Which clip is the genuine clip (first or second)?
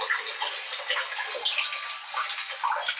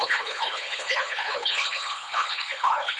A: first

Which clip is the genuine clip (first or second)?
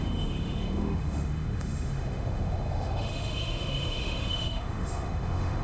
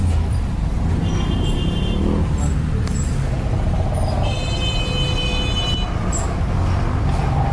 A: second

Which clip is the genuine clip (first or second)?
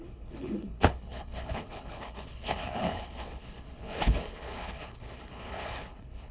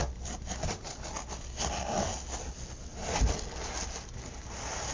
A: second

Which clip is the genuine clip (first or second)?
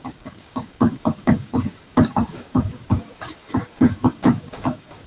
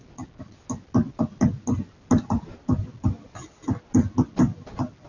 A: second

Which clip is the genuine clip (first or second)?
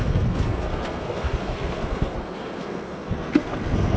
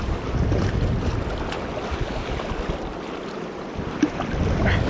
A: second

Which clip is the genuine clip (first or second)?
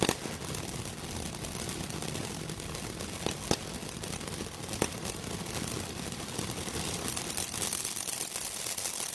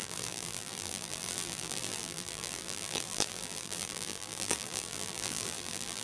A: first